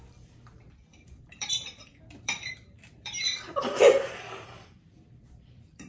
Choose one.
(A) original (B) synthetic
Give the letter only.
B